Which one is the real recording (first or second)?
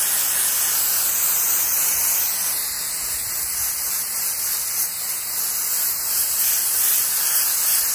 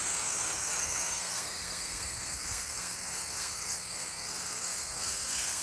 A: first